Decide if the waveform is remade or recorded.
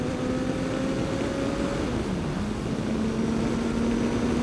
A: recorded